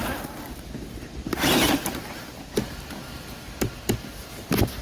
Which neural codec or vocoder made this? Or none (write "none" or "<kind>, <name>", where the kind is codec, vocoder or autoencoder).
none